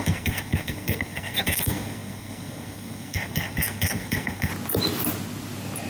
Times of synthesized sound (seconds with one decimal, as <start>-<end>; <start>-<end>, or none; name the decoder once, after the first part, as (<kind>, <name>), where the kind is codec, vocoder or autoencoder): 0.0-4.5 (codec, SNAC)